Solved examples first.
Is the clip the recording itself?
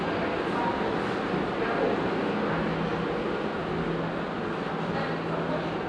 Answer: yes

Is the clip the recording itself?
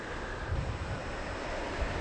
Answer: yes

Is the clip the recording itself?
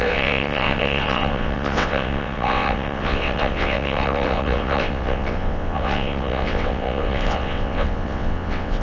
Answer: no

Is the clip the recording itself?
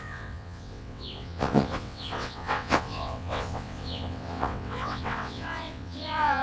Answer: no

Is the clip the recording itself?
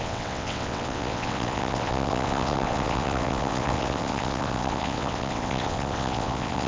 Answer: no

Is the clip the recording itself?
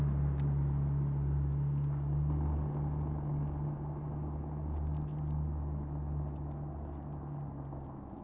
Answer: yes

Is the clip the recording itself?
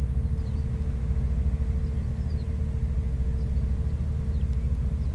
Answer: yes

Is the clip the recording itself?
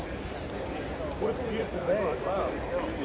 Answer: yes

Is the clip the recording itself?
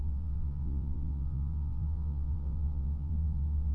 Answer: no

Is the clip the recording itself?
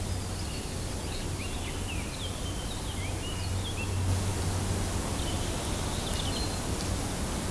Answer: yes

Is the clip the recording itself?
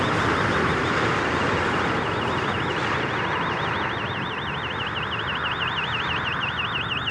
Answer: yes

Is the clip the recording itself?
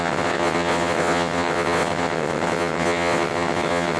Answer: no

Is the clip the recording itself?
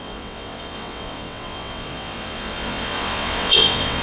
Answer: no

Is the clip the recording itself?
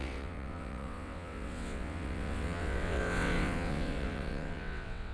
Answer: no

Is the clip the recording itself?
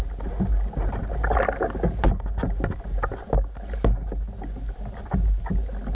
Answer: yes